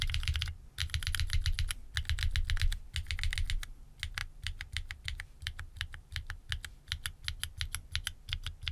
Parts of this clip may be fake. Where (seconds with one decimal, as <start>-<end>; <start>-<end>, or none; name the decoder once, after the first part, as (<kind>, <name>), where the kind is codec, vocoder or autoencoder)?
4.2-6.5 (vocoder, BigVGAN v2)